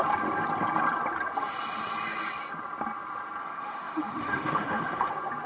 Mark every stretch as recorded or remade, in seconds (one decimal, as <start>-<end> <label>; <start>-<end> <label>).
0.0-3.4 recorded; 3.4-5.1 remade; 5.1-5.5 recorded